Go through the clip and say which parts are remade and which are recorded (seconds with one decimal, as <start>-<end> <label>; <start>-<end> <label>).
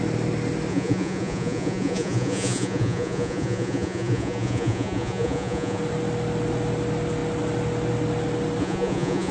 0.0-0.7 recorded; 0.7-5.8 remade; 5.8-8.6 recorded; 8.6-9.3 remade